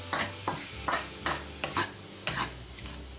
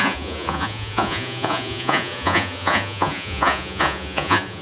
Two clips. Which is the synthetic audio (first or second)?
second